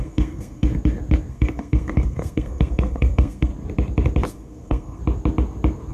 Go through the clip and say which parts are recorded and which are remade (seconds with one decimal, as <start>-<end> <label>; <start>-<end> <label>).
0.0-0.7 remade; 0.7-1.3 recorded; 1.3-3.5 remade; 3.5-4.3 recorded; 4.3-5.0 remade; 5.0-5.9 recorded